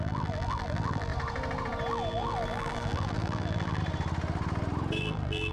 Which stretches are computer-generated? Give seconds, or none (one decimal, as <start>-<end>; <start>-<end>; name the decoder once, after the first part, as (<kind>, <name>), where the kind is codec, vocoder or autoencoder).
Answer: 0.0-1.1 (vocoder, BigVGAN v2); 1.9-3.8; 5.0-5.5